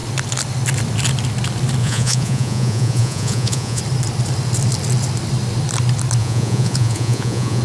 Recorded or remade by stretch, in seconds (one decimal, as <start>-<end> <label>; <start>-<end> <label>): 0.0-1.8 recorded; 1.8-3.8 remade; 3.8-6.2 recorded; 6.2-7.6 remade